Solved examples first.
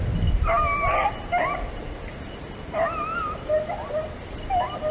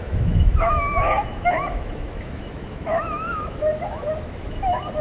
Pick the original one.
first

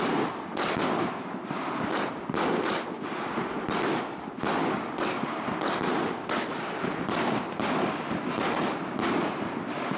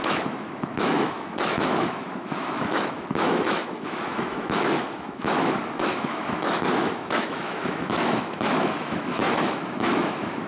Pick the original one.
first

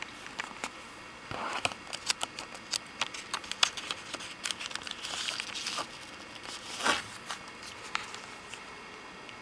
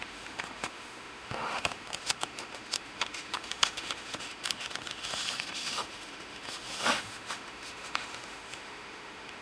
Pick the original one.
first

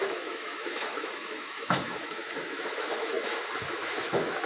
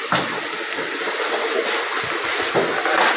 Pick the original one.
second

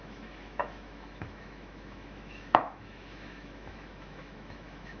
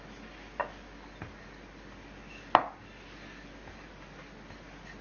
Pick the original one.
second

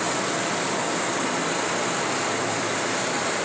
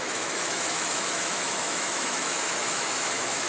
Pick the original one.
first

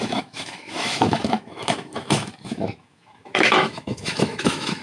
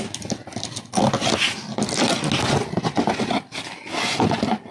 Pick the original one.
second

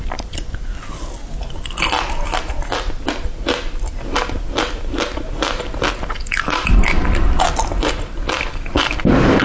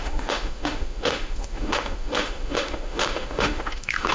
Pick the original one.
first